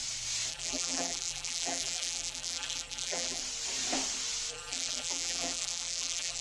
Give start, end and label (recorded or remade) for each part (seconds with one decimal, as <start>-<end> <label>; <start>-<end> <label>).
0.0-0.5 recorded; 0.5-3.4 remade; 3.4-4.5 recorded; 4.5-6.4 remade

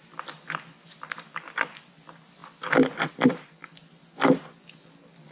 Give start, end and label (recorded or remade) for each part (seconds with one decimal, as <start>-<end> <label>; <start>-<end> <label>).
0.0-2.4 remade; 2.4-3.1 recorded; 3.1-5.3 remade

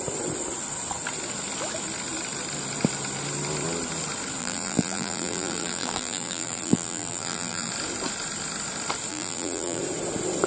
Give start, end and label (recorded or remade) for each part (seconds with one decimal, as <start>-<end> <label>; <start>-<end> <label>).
0.0-4.4 recorded; 4.4-7.7 remade; 7.7-9.1 recorded; 9.1-9.8 remade; 9.8-10.5 recorded

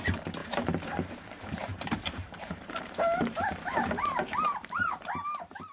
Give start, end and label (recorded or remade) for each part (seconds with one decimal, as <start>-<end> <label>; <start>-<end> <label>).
0.0-5.7 remade